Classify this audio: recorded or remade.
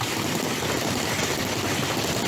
remade